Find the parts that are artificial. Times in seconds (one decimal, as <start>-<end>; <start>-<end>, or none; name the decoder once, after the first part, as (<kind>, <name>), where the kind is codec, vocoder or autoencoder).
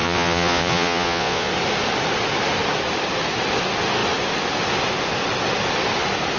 0.0-1.5 (vocoder, Vocos)